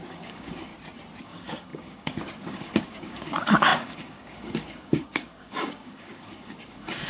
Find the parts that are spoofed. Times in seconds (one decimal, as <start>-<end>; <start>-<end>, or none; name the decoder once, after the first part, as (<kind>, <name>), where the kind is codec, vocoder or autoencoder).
0.0-0.7 (codec, DAC); 1.2-7.1